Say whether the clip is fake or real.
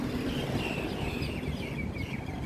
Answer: real